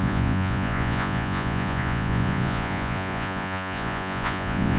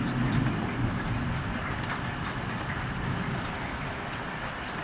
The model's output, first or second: first